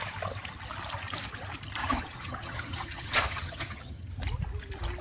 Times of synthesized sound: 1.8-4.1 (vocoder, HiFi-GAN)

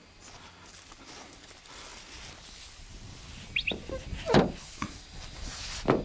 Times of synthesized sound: none

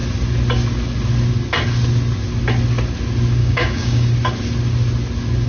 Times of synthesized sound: 3.4-4.1 (codec, DAC)

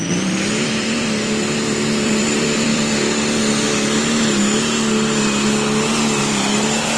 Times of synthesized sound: 0.0-3.4 (vocoder, BigVGAN v2); 6.2-7.0

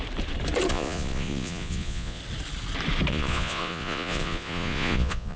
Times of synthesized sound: 0.7-2.2 (vocoder, Vocos); 3.1-5.4

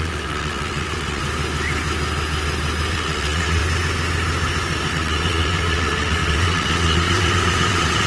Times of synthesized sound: 0.0-1.2 (vocoder, WaveNeXt); 2.9-3.6; 4.9-8.1

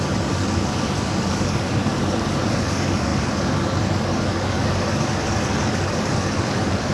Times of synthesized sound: 0.0-6.9 (codec, DAC)